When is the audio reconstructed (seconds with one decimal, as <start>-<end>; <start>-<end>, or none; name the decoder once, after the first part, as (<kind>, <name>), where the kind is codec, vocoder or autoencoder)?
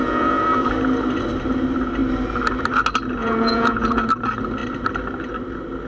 0.0-0.7 (vocoder, Vocos); 3.2-4.1